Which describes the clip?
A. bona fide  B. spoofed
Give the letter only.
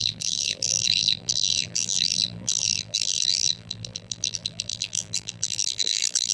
B